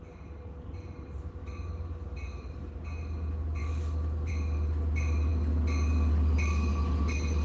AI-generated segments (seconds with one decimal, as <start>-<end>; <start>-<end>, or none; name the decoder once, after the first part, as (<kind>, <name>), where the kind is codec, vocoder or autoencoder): 1.4-2.7 (autoencoder, DAC-VAE); 3.6-4.3